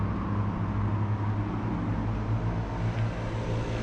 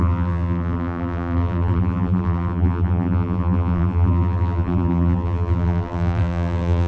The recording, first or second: first